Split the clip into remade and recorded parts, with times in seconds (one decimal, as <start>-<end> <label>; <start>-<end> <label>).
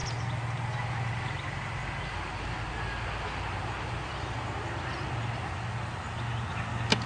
0.0-7.1 recorded